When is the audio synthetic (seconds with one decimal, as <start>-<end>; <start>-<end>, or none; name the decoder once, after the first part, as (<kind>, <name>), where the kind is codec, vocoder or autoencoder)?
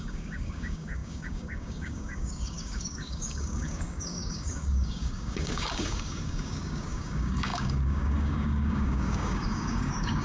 0.0-10.2 (codec, DAC)